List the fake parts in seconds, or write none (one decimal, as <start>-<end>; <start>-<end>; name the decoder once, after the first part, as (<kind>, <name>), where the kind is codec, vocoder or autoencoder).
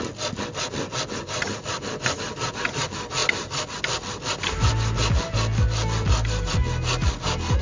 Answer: none